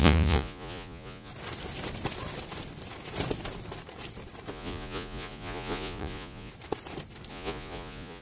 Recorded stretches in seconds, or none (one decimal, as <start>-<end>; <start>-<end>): 1.3-4.5; 6.5-7.3